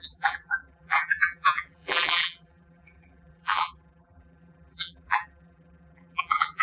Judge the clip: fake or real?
fake